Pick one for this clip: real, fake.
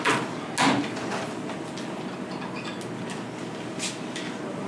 real